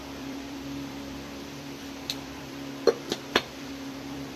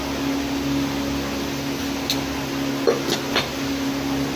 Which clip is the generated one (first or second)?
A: first